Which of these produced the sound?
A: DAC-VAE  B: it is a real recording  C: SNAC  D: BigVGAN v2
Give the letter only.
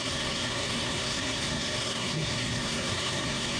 C